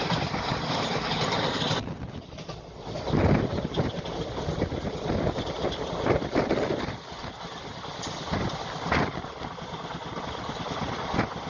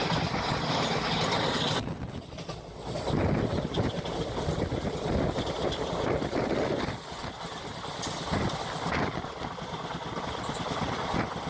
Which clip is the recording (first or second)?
second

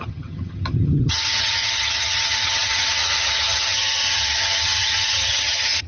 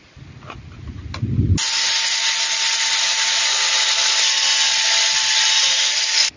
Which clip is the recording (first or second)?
second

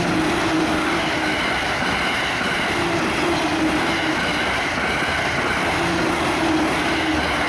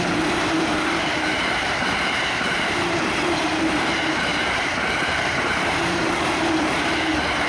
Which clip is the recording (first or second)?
first